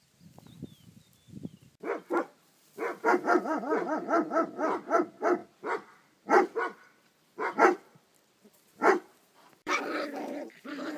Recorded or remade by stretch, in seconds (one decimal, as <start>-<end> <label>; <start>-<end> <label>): 0.0-2.9 recorded; 2.9-3.6 remade; 3.6-5.4 recorded; 5.4-9.8 remade; 9.8-11.0 recorded